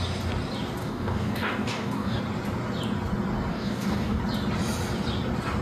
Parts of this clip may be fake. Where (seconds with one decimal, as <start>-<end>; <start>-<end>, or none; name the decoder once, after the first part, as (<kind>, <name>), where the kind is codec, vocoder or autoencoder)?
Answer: 0.8-2.2 (codec, DAC); 3.5-4.2